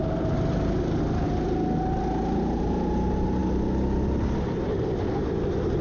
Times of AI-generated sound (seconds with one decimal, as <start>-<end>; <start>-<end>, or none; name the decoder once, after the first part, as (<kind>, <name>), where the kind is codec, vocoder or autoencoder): none